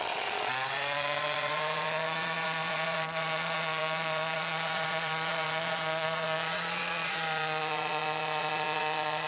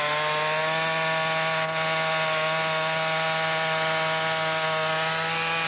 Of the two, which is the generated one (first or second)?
first